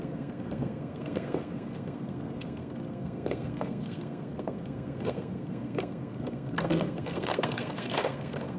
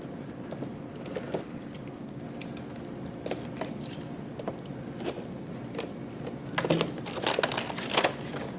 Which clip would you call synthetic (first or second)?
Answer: first